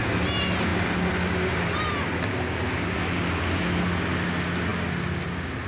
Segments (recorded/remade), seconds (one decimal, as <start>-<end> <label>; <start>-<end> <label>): 0.0-5.7 recorded